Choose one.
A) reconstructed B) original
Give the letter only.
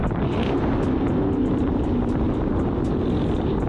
B